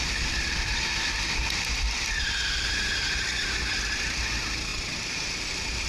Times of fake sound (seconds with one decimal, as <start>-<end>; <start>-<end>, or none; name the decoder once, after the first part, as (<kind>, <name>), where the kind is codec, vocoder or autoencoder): 0.0-0.7 (vocoder, BigVGAN v2); 4.2-5.9